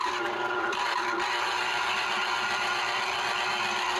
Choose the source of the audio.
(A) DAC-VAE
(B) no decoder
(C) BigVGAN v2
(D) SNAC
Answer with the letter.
B